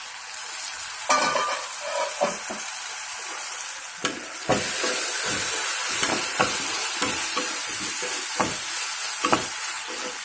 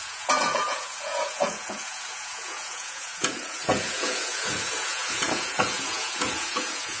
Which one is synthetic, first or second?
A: second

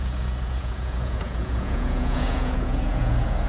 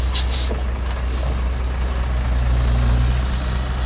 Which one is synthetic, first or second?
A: first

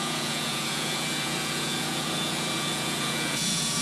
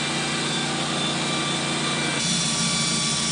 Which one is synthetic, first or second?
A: first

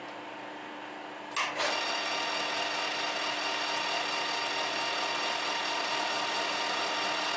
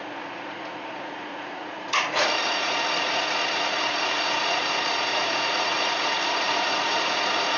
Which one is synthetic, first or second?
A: second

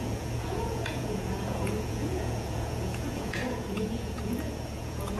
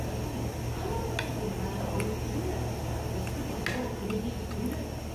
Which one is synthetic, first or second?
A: first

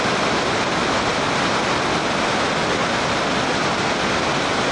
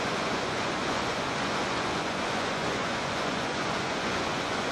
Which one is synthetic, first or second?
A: second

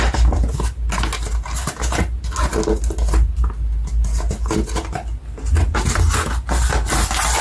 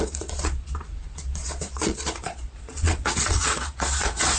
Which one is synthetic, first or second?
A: second